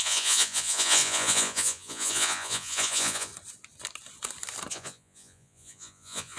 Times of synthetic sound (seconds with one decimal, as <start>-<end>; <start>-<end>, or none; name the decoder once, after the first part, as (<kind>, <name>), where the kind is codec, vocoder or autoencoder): 0.0-3.3 (vocoder, Vocos); 4.7-6.4